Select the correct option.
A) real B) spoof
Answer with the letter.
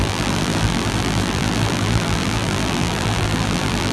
B